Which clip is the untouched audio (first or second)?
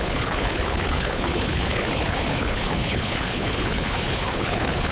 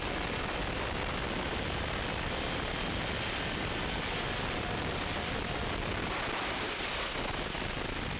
second